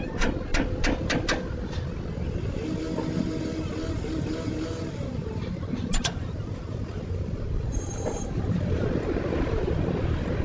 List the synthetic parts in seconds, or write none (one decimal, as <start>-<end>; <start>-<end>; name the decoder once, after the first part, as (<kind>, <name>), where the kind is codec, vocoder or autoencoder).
0.0-0.5 (vocoder, BigVGAN v2); 3.9-10.4